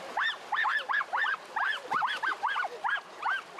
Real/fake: real